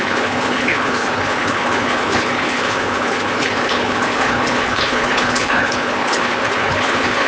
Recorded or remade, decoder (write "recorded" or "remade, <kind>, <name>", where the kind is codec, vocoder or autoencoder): remade, codec, HILCodec